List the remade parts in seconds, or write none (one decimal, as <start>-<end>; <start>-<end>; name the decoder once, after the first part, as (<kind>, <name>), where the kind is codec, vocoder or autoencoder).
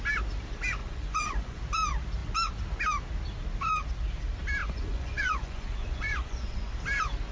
0.8-1.6 (vocoder, Vocos); 4.6-6.7